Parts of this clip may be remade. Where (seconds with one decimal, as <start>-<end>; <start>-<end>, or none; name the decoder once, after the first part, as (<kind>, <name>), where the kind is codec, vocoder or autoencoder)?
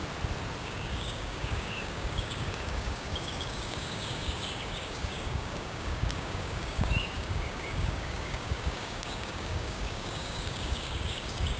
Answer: 0.6-11.6 (codec, DAC)